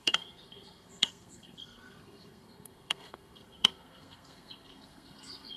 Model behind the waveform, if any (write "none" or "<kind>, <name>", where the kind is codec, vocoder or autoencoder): codec, SNAC